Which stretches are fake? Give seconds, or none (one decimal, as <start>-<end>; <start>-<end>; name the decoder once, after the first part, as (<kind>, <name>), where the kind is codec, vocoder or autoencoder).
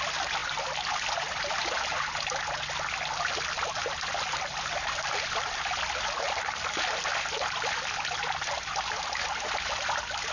none